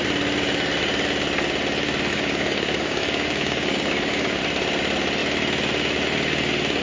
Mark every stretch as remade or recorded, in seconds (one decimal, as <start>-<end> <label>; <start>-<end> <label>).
0.0-2.1 recorded; 2.1-4.4 remade; 4.4-6.8 recorded